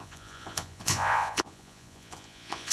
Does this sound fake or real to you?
fake